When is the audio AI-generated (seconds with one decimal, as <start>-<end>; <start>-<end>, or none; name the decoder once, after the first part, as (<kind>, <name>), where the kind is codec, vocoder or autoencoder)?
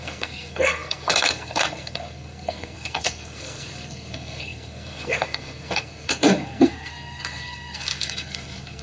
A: 0.0-8.8 (codec, SNAC)